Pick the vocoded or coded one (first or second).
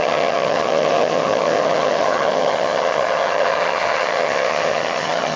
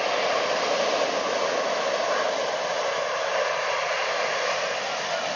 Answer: first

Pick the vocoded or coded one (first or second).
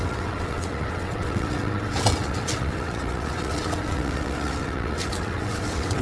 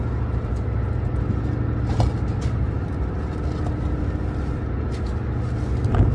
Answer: first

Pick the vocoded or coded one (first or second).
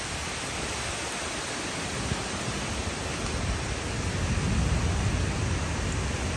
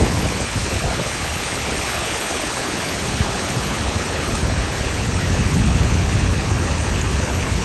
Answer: second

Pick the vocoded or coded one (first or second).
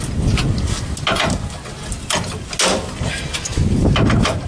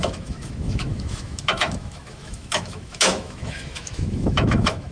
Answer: second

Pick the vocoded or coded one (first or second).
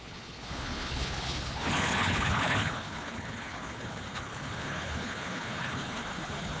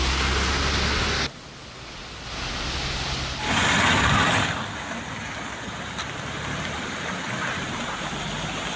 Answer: first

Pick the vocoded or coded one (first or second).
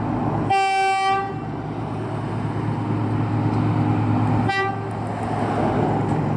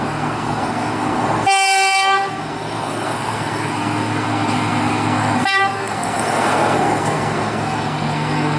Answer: second